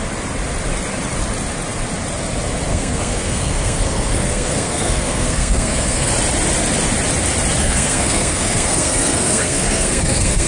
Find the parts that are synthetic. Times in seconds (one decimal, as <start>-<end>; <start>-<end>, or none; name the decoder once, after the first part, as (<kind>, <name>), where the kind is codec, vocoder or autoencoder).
2.7-6.1 (codec, SNAC); 7.6-10.5